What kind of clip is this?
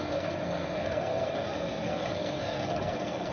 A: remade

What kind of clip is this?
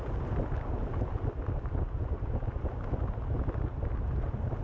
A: recorded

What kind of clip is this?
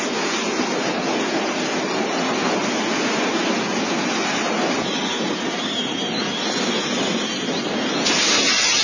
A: recorded